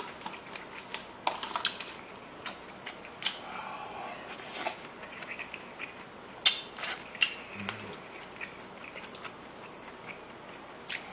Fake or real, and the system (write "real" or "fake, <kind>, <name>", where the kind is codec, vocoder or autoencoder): real